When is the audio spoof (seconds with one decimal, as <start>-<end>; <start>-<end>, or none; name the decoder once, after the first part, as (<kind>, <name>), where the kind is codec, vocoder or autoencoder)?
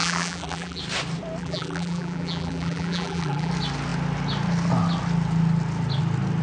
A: 0.0-0.8 (vocoder, BigVGAN v2); 1.4-3.5